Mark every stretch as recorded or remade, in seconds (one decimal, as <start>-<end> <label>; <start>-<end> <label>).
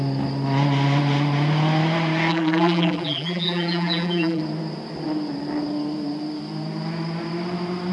0.0-2.3 recorded; 2.3-4.4 remade; 4.4-7.9 recorded